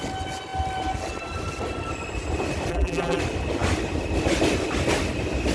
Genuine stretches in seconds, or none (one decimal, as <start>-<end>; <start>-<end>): 0.0-2.7; 3.2-5.5